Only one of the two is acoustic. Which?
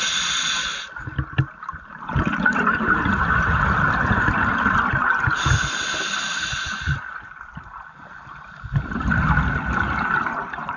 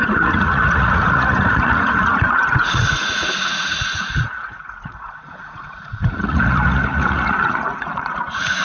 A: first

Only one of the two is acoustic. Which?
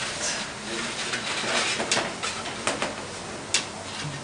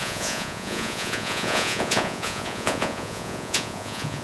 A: first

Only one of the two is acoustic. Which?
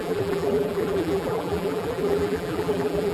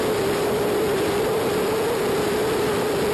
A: second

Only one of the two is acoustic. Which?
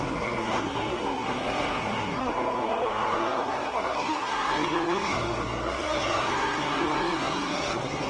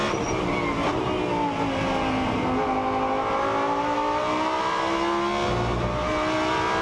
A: second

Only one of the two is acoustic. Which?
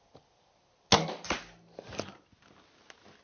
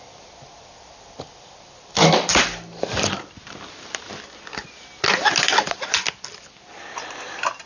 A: first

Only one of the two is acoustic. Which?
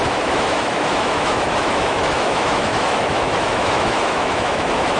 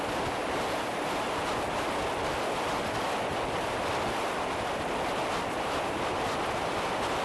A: second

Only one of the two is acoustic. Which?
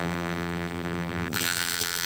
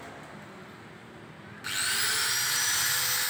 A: second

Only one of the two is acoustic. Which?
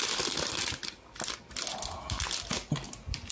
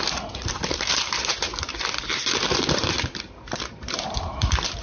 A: first